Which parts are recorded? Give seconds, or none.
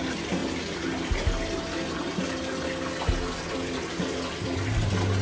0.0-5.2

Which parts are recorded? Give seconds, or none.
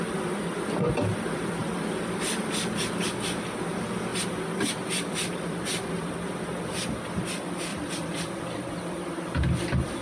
0.0-1.6; 3.4-7.7; 8.7-10.0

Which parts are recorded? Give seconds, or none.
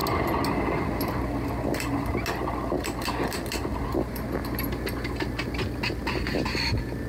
0.0-7.1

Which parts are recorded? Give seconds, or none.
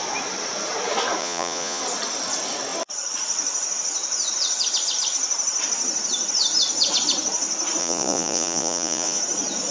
0.0-1.2; 1.8-7.8; 9.2-9.7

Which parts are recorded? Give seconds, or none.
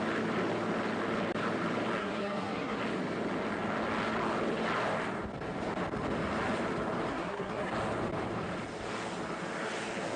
0.0-2.0; 2.8-7.1; 7.7-10.2